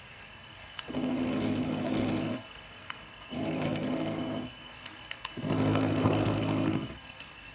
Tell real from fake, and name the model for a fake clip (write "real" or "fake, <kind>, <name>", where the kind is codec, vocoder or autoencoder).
fake, codec, SNAC